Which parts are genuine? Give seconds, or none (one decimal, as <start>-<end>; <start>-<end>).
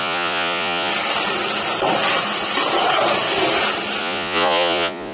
0.9-4.0